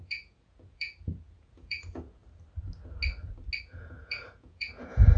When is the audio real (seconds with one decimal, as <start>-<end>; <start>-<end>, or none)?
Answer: 2.2-3.6

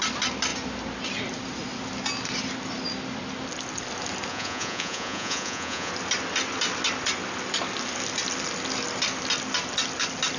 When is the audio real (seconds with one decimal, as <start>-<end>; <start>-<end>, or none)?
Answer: 0.0-4.3; 5.9-10.4

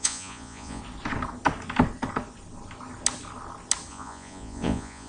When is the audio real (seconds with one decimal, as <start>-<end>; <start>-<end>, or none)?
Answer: 0.8-3.9

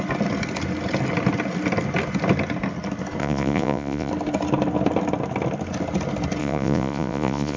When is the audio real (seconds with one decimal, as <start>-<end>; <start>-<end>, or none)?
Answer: 0.0-3.2; 4.1-6.4